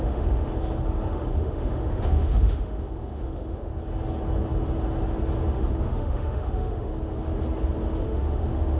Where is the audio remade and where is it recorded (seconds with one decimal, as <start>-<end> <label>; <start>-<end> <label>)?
0.0-0.5 remade; 0.5-1.1 recorded; 1.1-3.7 remade; 3.7-5.5 recorded; 5.5-6.9 remade; 6.9-8.0 recorded; 8.0-8.8 remade